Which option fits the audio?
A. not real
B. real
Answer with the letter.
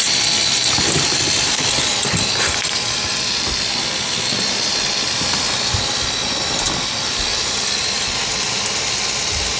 B